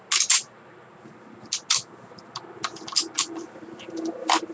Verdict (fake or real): real